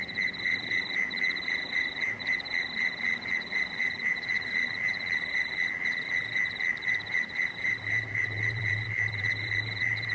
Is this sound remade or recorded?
remade